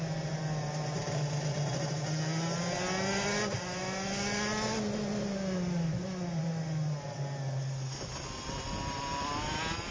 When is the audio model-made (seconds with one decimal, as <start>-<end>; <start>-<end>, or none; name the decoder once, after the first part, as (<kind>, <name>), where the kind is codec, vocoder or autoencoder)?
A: none